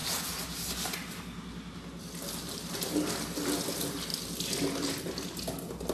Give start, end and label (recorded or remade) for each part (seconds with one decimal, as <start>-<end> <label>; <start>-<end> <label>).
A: 0.0-5.9 recorded